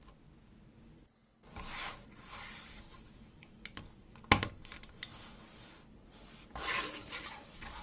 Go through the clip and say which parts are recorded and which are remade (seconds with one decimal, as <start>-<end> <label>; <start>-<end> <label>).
0.0-7.8 recorded